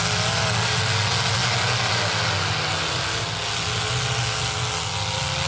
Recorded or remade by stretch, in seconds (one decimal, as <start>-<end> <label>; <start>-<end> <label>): 0.0-5.5 recorded